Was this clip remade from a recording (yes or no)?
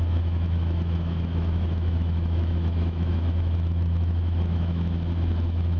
yes